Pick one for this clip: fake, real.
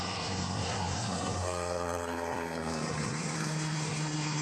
fake